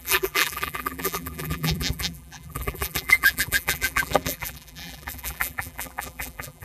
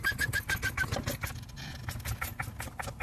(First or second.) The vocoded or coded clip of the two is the first